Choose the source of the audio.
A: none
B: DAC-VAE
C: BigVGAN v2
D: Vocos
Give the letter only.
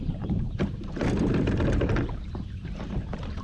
C